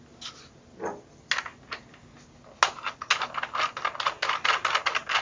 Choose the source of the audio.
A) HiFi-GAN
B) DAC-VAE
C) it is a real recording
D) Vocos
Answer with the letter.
C